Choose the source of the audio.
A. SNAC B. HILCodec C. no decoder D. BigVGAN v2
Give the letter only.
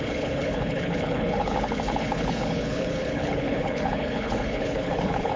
B